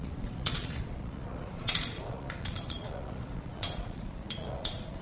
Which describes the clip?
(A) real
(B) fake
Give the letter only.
B